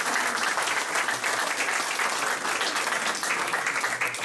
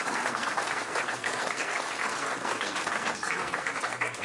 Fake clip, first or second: second